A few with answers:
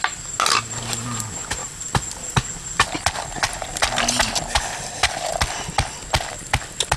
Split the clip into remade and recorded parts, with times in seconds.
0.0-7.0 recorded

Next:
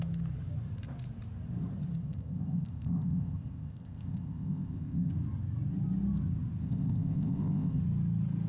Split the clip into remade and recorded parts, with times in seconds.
0.0-2.0 recorded; 2.0-5.1 remade; 5.1-6.6 recorded; 6.6-7.8 remade; 7.8-8.5 recorded

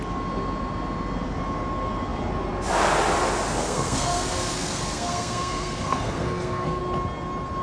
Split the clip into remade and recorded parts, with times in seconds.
0.0-3.5 recorded; 3.5-6.8 remade; 6.8-7.6 recorded

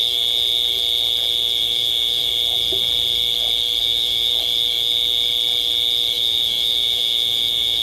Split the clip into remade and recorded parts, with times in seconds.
0.0-1.6 recorded; 1.6-2.3 remade; 2.3-3.8 recorded; 3.8-4.3 remade; 4.3-6.1 recorded; 6.1-7.8 remade

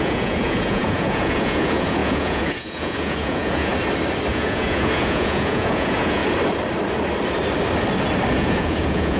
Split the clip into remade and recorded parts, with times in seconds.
0.0-3.7 remade; 3.7-4.3 recorded; 4.3-6.2 remade; 6.2-8.3 recorded; 8.3-9.2 remade

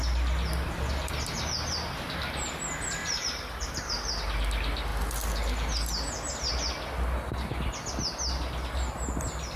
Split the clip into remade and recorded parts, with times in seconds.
0.0-3.0 recorded; 3.0-3.9 remade; 3.9-9.6 recorded

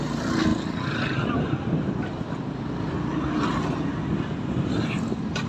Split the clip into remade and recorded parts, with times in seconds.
0.0-0.5 recorded; 0.5-2.0 remade; 2.0-5.5 recorded

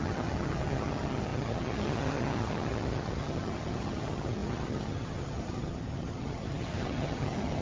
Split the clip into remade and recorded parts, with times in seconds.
0.0-7.6 remade